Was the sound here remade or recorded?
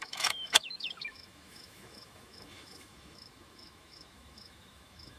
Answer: remade